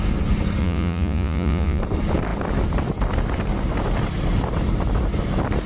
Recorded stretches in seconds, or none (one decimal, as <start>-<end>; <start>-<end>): 0.0-0.6; 1.8-5.7